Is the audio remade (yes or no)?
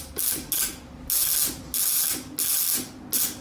no